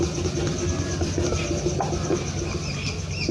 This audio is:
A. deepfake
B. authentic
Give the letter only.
B